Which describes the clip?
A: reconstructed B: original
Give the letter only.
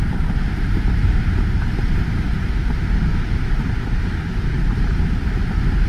A